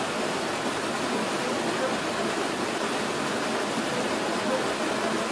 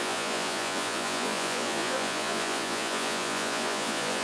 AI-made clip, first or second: second